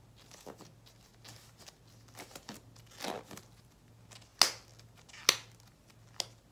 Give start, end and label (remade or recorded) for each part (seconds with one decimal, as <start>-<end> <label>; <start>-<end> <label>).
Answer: 0.0-6.5 recorded